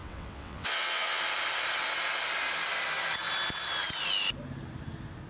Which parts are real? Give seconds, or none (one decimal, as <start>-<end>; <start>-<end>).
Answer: 1.2-5.3